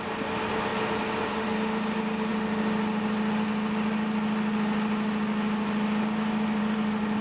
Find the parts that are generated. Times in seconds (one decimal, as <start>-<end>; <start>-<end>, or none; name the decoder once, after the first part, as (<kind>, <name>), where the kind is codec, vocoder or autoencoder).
none